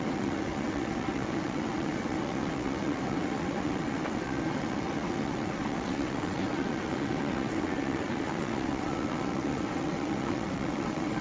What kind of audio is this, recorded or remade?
remade